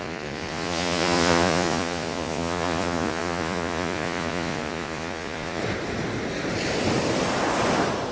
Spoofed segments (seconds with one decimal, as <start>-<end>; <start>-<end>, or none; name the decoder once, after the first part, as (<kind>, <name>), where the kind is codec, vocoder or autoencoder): 0.0-5.6 (vocoder, Vocos)